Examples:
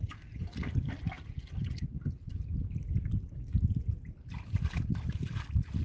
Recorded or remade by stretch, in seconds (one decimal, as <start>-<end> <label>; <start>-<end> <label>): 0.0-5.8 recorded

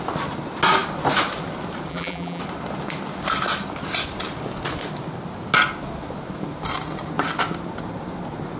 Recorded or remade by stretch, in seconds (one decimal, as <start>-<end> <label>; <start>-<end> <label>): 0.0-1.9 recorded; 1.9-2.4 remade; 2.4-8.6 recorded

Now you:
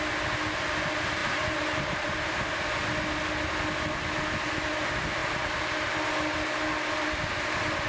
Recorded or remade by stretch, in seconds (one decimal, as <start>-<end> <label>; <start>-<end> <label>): 0.0-1.2 recorded; 1.2-2.6 remade; 2.6-7.9 recorded

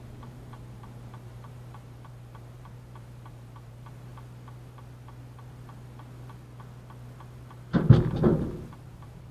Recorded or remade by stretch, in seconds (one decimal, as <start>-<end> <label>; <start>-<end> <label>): 0.0-4.1 remade; 4.1-8.9 recorded; 8.9-9.3 remade

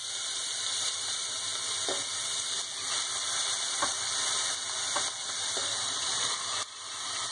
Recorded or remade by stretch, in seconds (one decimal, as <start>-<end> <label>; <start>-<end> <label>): 0.0-1.5 remade; 1.5-5.2 recorded; 5.2-7.3 remade

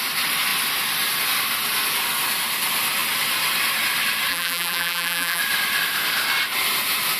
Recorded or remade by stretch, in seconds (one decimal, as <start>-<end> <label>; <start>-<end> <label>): 0.0-4.3 recorded; 4.3-5.4 remade; 5.4-7.2 recorded